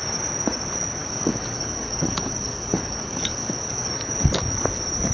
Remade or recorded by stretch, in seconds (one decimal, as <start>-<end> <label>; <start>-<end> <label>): 0.0-1.0 recorded; 1.0-3.9 remade; 3.9-5.1 recorded